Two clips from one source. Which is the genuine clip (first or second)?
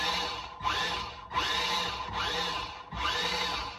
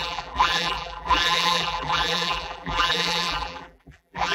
first